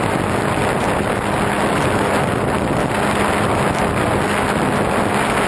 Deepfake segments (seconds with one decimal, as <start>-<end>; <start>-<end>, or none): none